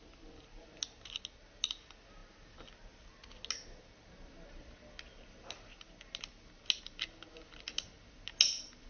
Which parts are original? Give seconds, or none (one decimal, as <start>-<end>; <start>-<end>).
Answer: 0.0-8.9

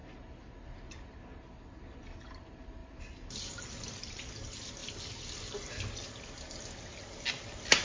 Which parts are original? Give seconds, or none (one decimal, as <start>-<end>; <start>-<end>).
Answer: 0.0-7.8